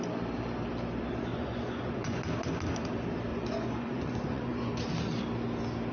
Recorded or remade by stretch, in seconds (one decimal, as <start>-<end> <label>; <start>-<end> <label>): 0.0-1.3 recorded; 1.3-2.2 remade; 2.2-3.3 recorded; 3.3-4.7 remade; 4.7-5.9 recorded